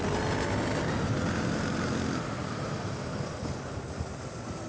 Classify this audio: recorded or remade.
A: recorded